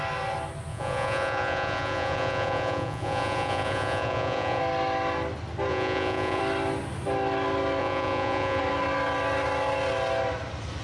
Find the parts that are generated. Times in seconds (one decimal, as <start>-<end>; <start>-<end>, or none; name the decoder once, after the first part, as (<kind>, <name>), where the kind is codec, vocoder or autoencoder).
0.7-4.6 (vocoder, Vocos); 5.7-6.4; 7.8-8.6